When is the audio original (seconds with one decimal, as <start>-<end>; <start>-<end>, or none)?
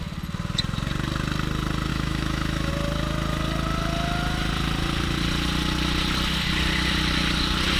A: 0.0-1.9; 2.7-7.8